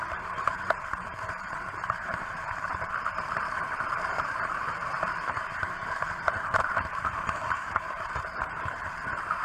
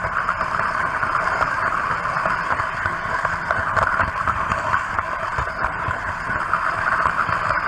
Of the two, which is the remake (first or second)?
first